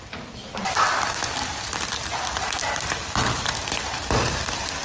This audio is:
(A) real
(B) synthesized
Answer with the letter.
A